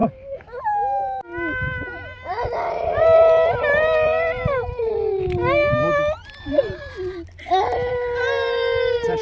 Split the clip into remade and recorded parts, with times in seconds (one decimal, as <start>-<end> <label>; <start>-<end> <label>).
0.0-9.2 recorded